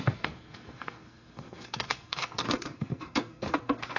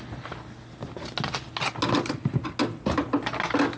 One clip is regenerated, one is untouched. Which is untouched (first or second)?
second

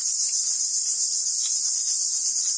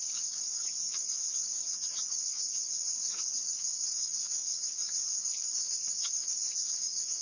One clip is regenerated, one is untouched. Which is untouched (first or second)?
first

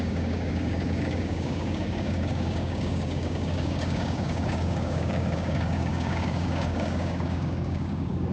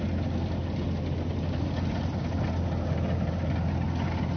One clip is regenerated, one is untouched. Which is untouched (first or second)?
second